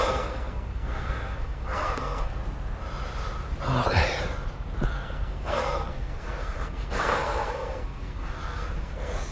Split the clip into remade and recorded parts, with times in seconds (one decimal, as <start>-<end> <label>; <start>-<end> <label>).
0.0-2.4 remade; 2.4-4.9 recorded; 4.9-9.3 remade